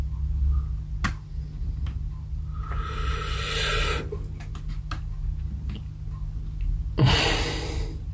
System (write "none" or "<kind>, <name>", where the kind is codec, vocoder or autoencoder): none